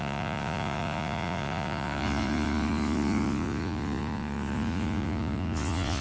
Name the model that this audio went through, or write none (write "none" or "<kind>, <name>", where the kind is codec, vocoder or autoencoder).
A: vocoder, Vocos